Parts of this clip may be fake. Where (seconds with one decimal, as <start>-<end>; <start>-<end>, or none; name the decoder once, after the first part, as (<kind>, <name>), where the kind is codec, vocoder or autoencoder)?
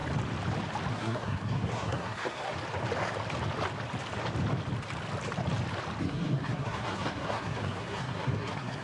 0.9-2.5 (codec, SNAC); 6.0-8.8